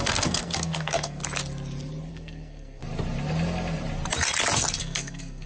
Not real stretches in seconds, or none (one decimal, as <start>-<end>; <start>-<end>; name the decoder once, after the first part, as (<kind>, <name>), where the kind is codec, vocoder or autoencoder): 0.0-1.2 (codec, SNAC); 2.1-2.8; 4.8-5.5